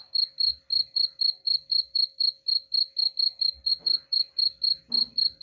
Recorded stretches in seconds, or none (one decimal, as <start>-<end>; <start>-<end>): 0.0-5.4